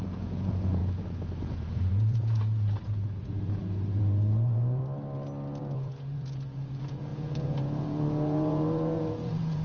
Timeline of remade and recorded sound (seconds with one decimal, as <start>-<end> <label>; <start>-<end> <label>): 0.0-0.8 remade; 0.8-1.4 recorded; 1.4-4.8 remade; 4.8-5.6 recorded; 5.6-9.6 remade